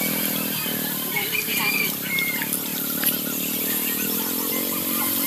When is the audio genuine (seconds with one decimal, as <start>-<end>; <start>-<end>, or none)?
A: none